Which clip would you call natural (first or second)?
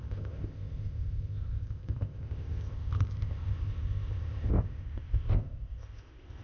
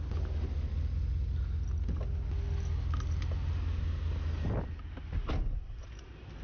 second